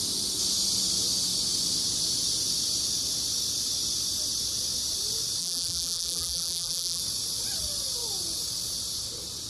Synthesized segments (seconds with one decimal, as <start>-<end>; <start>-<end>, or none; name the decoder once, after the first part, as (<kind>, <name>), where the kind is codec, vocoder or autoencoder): 5.4-7.0 (vocoder, BigVGAN v2)